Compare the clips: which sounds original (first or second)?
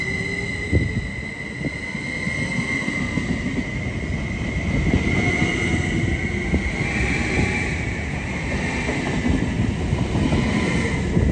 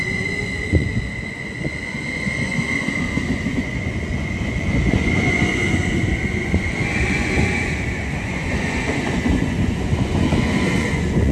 first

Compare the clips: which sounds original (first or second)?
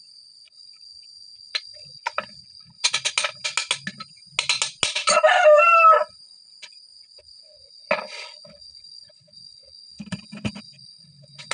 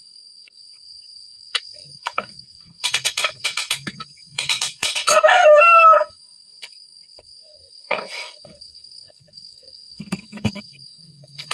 first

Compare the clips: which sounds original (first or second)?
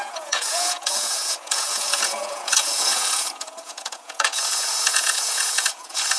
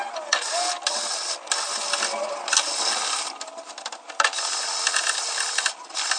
second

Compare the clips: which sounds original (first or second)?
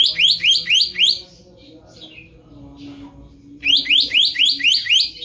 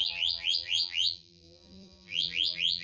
first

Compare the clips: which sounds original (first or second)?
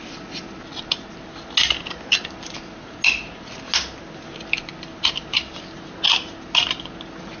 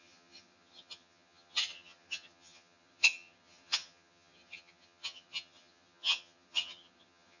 first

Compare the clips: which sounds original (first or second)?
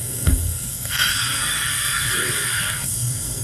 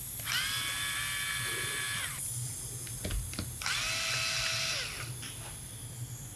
second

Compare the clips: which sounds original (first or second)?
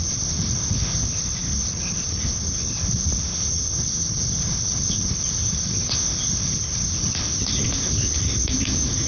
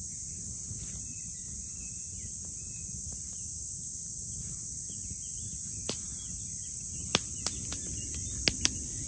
second